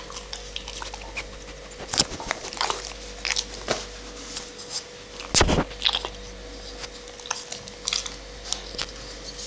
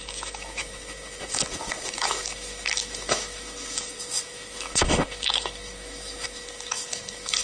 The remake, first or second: second